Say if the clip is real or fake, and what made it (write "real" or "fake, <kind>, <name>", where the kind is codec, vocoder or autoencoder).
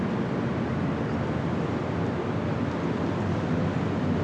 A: real